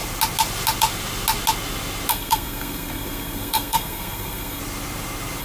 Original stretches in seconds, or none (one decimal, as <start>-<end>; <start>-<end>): 0.0-2.1; 4.6-5.4

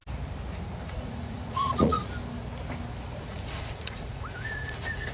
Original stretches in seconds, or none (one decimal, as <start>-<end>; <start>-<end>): 0.0-0.9; 2.0-3.2

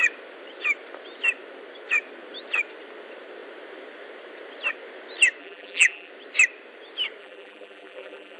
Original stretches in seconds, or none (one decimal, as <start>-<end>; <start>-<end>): 0.0-5.4; 6.1-7.2

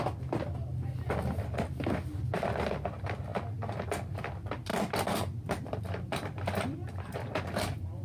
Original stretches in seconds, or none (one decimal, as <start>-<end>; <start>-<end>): 3.3-4.2

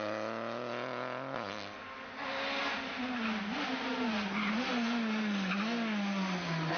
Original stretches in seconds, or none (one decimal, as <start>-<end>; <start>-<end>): 0.0-6.8

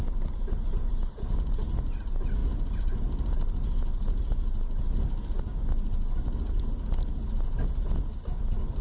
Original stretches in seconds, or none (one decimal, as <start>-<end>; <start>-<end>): 0.0-8.8

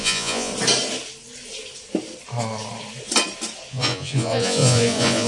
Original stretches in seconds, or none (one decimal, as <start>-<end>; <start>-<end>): 0.5-3.7